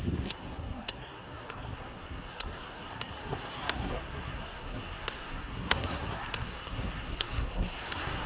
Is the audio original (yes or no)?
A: no